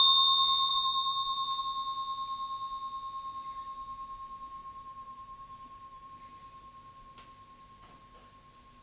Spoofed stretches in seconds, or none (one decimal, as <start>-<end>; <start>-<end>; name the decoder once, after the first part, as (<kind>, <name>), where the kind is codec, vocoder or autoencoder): 0.7-1.6 (vocoder, BigVGAN v2); 4.6-6.1